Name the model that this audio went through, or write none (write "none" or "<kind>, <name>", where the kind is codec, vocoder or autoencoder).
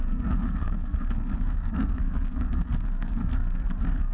codec, SNAC